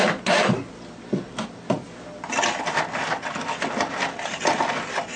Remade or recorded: recorded